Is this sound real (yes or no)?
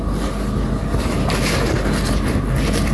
yes